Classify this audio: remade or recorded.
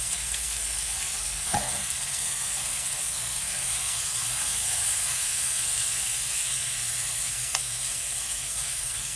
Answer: remade